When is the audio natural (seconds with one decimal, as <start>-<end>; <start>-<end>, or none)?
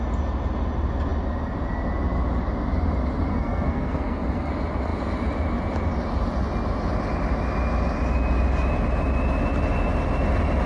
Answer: 0.0-3.3; 4.5-10.7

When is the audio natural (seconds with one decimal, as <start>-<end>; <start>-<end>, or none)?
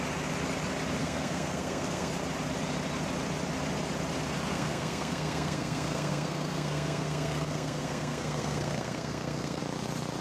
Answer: 0.0-1.0; 2.1-4.5; 9.6-10.2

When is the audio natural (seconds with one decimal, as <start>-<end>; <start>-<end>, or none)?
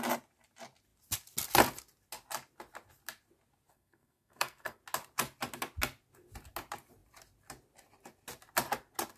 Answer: 0.0-3.7; 4.8-9.2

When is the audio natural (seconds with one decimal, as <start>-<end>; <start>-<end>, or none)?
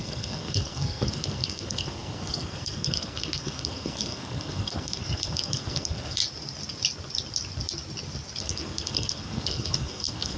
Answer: 6.2-8.4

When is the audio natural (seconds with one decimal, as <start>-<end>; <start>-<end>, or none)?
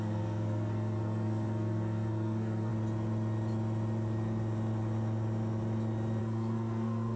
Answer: 2.7-6.2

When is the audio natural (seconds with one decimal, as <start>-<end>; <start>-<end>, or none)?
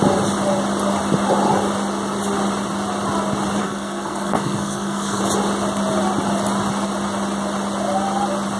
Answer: 0.0-3.6; 5.2-8.6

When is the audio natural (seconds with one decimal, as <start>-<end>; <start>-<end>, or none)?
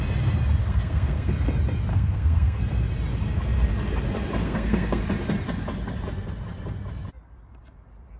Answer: 0.0-0.6; 1.3-1.9; 2.6-4.4; 5.0-8.2